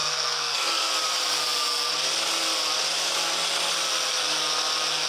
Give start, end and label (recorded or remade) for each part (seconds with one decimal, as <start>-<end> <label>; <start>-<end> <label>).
0.0-0.9 remade; 0.9-5.1 recorded